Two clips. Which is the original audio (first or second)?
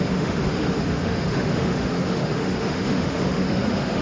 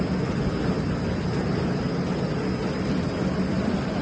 second